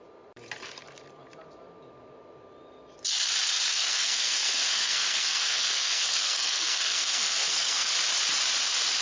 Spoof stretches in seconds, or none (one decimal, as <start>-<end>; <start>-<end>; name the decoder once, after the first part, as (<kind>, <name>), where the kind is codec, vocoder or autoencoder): 3.7-7.9 (codec, SNAC)